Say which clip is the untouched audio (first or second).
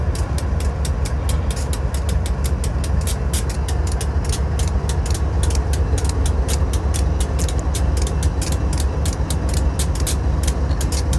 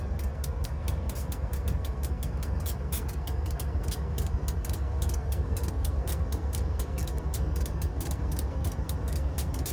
first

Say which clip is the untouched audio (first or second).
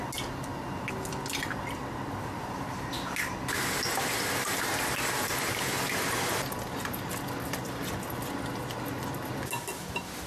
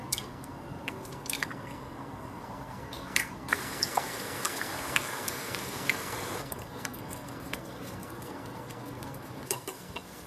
first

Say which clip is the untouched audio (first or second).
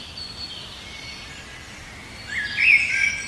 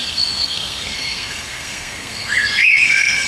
first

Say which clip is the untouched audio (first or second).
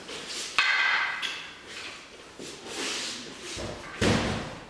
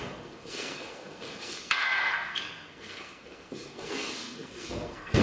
first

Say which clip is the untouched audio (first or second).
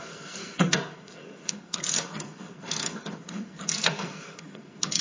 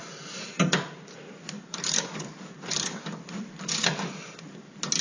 second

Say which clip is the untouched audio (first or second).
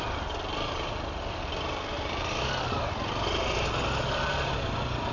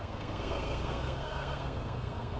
first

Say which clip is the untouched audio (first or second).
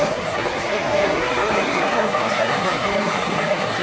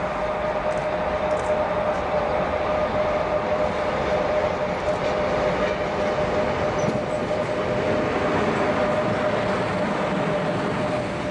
second